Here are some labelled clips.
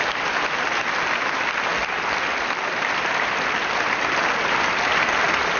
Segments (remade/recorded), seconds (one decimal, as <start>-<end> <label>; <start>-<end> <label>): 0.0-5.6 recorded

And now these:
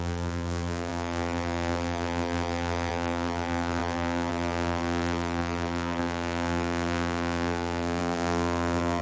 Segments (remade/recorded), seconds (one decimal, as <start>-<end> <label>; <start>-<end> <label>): 0.0-9.0 remade

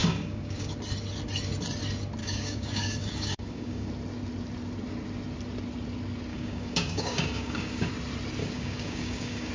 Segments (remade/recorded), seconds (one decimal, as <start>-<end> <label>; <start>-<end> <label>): 0.0-0.7 remade; 0.7-2.2 recorded; 2.2-3.9 remade; 3.9-6.3 recorded; 6.3-7.9 remade; 7.9-8.4 recorded; 8.4-9.5 remade